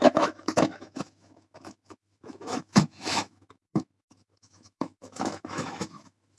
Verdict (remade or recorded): remade